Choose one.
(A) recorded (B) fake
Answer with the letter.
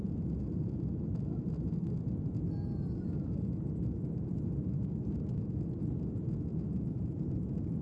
A